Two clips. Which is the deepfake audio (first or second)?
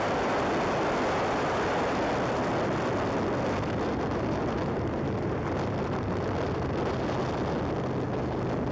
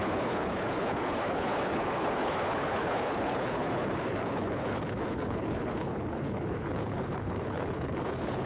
second